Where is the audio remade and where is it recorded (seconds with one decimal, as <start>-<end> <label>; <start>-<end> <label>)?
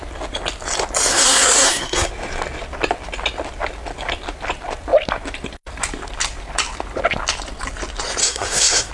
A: 0.0-1.1 recorded; 1.1-2.1 remade; 2.1-8.2 recorded; 8.2-8.9 remade